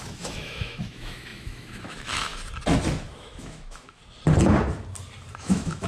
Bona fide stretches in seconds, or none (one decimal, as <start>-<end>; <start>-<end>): 2.3-3.2; 4.0-5.4